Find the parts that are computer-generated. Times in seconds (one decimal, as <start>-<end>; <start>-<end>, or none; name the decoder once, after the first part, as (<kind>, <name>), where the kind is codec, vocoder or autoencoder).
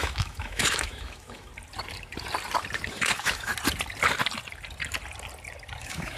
0.0-1.5 (autoencoder, DAC-VAE); 2.9-3.5; 5.8-6.2